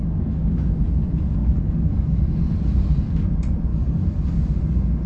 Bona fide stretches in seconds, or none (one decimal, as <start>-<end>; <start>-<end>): 0.7-1.4; 2.2-3.7; 4.6-5.1

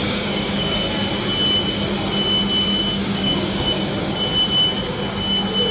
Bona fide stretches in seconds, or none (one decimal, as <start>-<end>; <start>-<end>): 0.8-3.0; 4.1-5.7

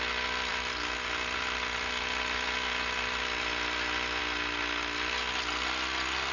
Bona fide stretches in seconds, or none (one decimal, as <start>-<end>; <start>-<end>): 0.0-6.3